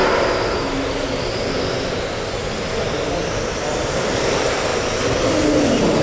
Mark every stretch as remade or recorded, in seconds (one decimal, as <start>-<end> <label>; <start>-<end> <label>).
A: 0.0-3.6 recorded; 3.6-4.7 remade; 4.7-6.0 recorded